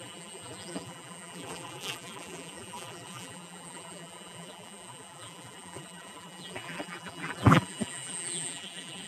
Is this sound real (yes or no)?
no